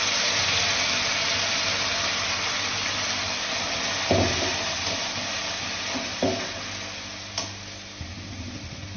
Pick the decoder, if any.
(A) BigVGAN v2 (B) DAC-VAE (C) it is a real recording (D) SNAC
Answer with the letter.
C